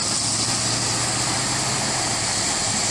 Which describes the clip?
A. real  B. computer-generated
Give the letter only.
A